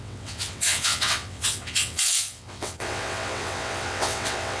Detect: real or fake fake